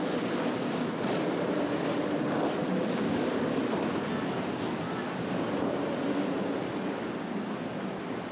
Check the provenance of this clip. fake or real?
real